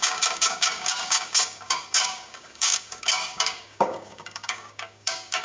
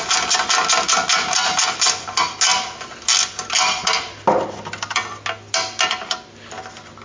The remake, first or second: first